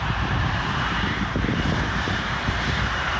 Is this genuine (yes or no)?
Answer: no